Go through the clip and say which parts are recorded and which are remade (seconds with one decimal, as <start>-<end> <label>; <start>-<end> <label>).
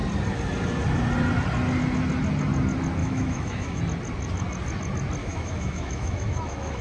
0.0-3.0 recorded; 3.0-3.8 remade; 3.8-5.2 recorded; 5.2-6.8 remade